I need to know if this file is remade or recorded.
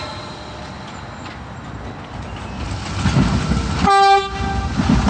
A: recorded